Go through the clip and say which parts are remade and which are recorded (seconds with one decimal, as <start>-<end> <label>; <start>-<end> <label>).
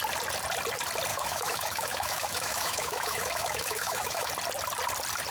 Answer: 0.0-1.1 recorded; 1.1-4.3 remade; 4.3-5.3 recorded